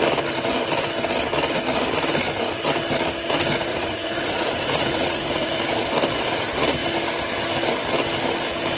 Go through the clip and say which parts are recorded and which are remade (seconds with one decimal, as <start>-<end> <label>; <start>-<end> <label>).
0.0-3.7 recorded; 3.7-5.8 remade; 5.8-8.8 recorded